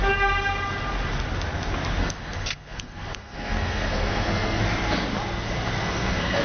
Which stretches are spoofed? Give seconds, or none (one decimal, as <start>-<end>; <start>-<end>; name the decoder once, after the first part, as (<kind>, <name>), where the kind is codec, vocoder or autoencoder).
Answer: 2.0-4.6 (codec, SNAC); 5.8-6.4